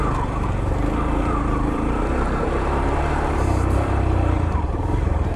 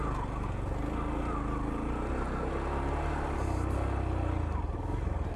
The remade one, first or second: first